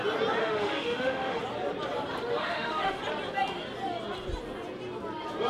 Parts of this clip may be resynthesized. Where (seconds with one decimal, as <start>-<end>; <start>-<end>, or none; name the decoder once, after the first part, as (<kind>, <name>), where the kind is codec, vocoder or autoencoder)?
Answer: 0.4-1.4 (autoencoder, DAC-VAE); 2.4-3.0